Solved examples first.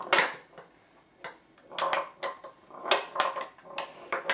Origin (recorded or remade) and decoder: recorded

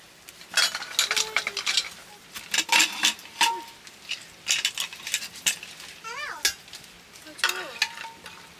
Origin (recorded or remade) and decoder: recorded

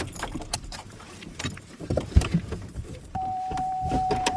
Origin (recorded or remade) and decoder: remade, vocoder, BigVGAN v2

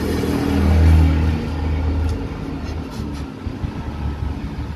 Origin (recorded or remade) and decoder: recorded